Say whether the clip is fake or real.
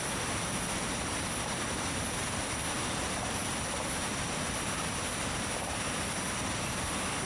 fake